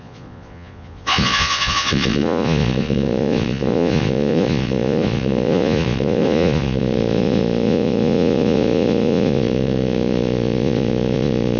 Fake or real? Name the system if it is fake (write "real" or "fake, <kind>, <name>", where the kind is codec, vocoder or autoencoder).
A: fake, vocoder, Vocos